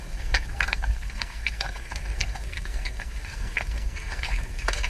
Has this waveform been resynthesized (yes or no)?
yes